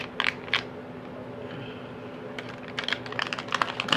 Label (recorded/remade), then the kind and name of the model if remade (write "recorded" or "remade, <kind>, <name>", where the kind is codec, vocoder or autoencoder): recorded